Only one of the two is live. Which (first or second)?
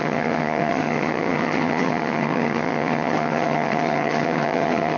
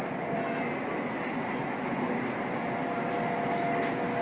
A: second